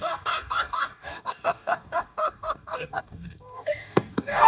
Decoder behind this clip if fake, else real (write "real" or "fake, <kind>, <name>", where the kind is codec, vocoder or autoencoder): fake, codec, DAC